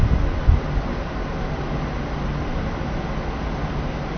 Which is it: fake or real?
real